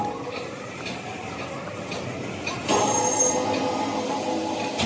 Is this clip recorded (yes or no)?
yes